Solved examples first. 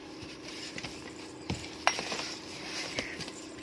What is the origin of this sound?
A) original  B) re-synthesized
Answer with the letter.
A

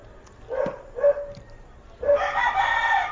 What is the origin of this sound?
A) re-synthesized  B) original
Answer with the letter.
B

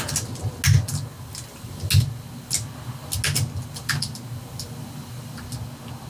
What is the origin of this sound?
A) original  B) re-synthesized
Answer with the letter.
A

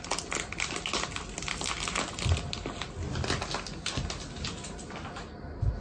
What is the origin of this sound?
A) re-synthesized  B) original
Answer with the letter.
B